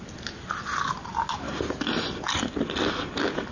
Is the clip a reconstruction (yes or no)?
no